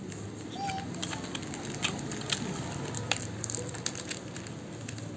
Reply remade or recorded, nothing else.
recorded